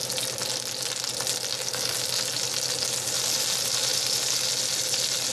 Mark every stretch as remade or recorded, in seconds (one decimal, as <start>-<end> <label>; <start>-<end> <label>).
0.0-5.3 recorded